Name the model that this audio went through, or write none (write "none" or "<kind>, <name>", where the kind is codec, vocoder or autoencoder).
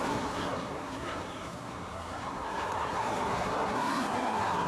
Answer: codec, SNAC